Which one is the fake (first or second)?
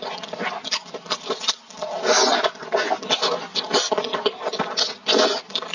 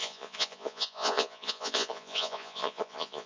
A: second